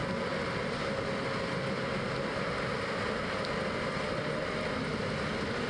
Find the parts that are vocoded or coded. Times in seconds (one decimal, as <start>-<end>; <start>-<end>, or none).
none